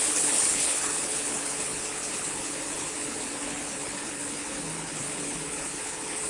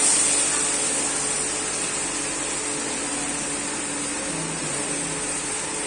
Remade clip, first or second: first